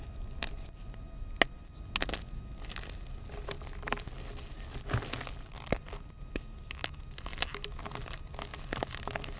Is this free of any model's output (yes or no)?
yes